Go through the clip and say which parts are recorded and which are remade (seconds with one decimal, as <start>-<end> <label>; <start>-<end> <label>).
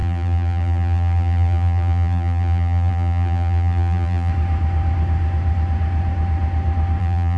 0.0-4.3 remade; 4.3-7.0 recorded; 7.0-7.4 remade